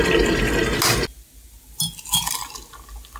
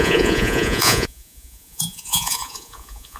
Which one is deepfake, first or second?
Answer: second